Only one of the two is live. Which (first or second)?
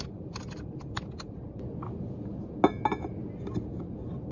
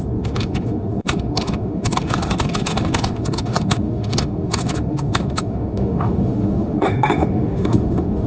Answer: first